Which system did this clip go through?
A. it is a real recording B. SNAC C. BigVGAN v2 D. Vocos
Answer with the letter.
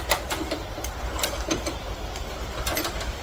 A